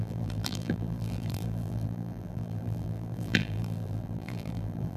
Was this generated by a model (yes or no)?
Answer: yes